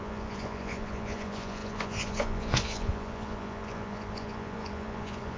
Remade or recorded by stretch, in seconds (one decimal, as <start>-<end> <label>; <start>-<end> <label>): 0.0-5.4 remade